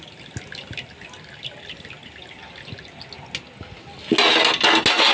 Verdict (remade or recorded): recorded